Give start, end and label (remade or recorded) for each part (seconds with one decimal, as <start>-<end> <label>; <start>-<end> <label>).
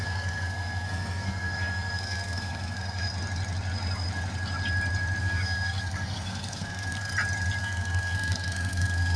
0.0-3.1 remade; 3.1-5.2 recorded; 5.2-7.1 remade; 7.1-7.6 recorded; 7.6-9.2 remade